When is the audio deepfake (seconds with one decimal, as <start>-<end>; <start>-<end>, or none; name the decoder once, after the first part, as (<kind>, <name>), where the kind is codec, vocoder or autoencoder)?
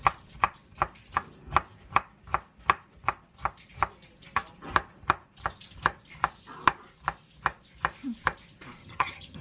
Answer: 8.8-9.4 (vocoder, HiFi-GAN)